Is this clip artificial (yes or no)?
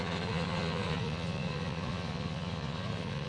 yes